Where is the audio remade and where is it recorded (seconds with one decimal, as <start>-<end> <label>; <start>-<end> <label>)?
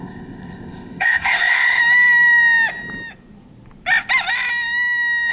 0.0-1.8 remade; 1.8-5.3 recorded